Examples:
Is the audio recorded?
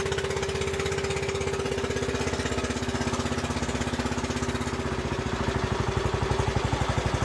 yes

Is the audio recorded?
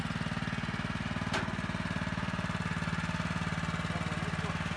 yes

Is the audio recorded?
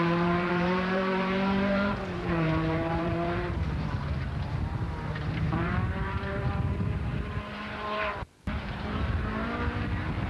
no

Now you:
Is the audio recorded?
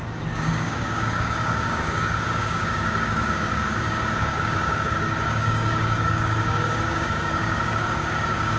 no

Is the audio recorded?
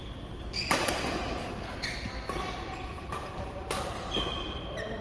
yes